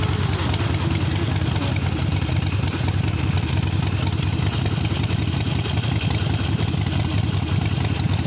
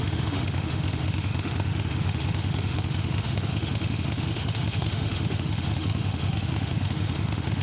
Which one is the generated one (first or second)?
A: second